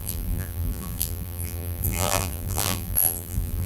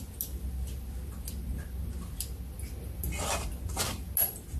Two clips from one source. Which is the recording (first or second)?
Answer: second